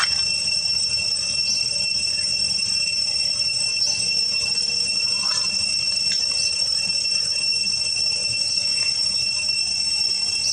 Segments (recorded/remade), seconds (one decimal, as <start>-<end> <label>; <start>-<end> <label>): 0.0-8.2 recorded; 8.2-9.0 remade; 9.0-10.5 recorded